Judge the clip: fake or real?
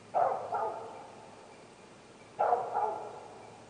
real